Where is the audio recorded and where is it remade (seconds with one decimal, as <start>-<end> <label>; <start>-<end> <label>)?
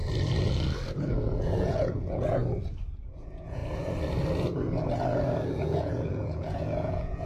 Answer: 0.0-1.1 recorded; 1.1-2.4 remade; 2.4-3.2 recorded; 3.2-3.6 remade; 3.6-5.5 recorded; 5.5-7.3 remade